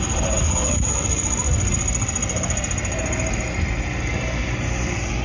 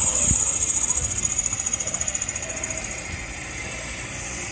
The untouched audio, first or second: first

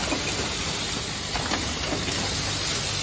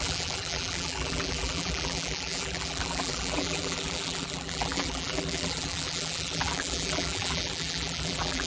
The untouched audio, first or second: first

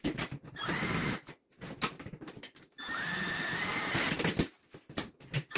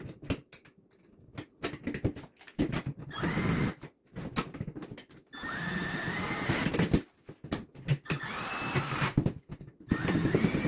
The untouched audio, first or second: second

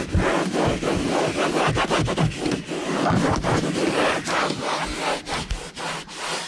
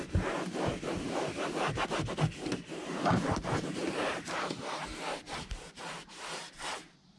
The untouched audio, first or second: first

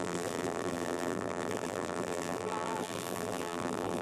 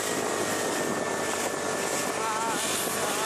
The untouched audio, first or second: second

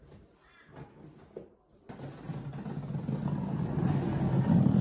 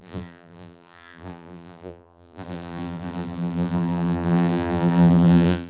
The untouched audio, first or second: first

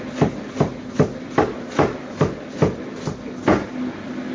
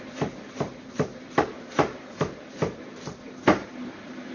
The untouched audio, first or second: first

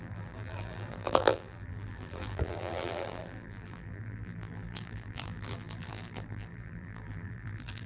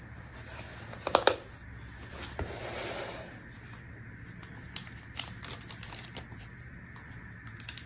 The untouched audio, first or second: second